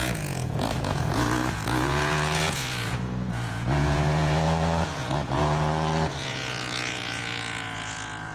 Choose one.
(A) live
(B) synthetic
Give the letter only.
B